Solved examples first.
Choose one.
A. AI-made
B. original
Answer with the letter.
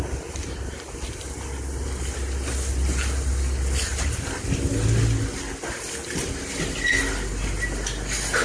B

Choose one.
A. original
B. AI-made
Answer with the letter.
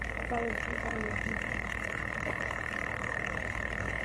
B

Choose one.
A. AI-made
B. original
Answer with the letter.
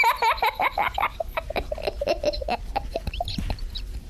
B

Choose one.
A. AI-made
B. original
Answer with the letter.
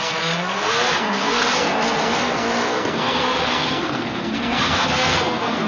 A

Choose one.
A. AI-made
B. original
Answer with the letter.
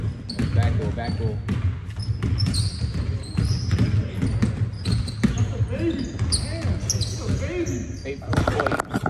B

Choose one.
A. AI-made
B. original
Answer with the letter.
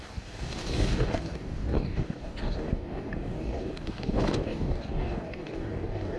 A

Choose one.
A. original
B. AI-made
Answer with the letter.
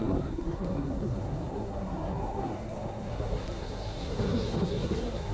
B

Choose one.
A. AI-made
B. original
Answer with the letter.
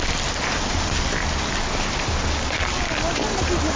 B